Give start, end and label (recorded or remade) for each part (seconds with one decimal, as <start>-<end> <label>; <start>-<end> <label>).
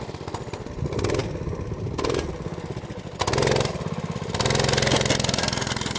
0.0-6.0 recorded